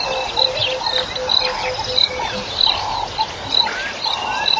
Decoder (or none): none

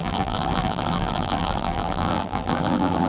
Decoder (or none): vocoder, BigVGAN v2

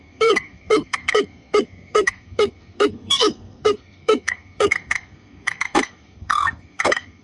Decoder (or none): codec, SNAC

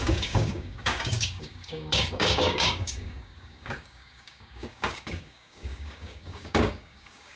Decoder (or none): codec, DAC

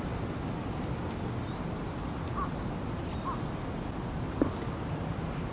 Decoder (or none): none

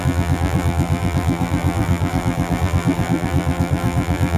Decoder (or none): vocoder, BigVGAN v2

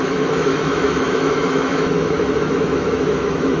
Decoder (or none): autoencoder, DAC-VAE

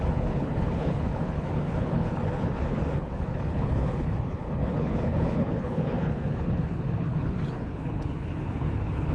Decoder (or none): codec, HILCodec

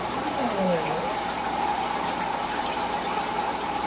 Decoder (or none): none